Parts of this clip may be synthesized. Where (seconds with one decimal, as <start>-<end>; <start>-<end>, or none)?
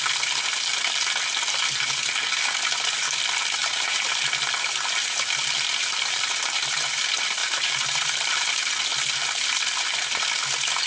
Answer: 3.6-4.5; 5.8-7.0; 7.4-8.7